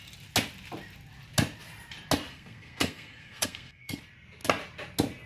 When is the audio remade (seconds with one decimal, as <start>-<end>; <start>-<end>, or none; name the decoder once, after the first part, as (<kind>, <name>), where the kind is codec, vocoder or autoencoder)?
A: 2.3-4.0 (codec, SNAC)

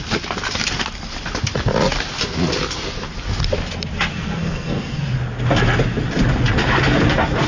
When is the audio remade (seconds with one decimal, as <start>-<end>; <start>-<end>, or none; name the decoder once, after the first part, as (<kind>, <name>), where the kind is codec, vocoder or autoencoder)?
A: 4.1-5.0 (codec, SNAC)

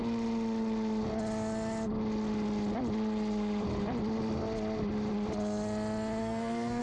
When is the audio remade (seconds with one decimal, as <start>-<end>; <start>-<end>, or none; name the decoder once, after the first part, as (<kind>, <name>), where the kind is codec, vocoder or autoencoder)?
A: 6.2-6.8 (codec, SNAC)